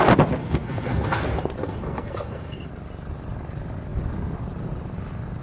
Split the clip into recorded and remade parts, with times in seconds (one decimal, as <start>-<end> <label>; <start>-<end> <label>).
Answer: 0.0-0.4 recorded; 0.4-1.2 remade; 1.2-1.6 recorded; 1.6-2.7 remade; 2.7-5.4 recorded